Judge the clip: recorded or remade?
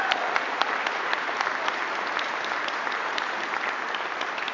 recorded